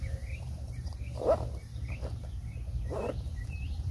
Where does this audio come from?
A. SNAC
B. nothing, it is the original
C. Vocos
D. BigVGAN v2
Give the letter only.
D